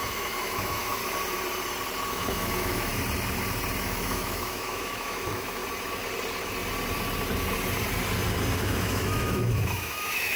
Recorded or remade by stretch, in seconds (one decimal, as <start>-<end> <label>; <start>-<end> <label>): 0.0-1.0 remade; 1.0-2.1 recorded; 2.1-2.9 remade; 2.9-3.8 recorded; 3.8-5.6 remade; 5.6-8.6 recorded; 8.6-10.4 remade